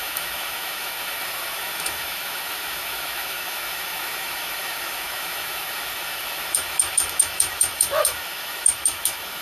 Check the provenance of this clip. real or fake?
fake